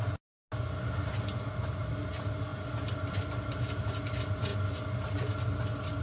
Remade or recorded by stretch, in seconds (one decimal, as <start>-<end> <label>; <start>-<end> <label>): 0.0-6.0 recorded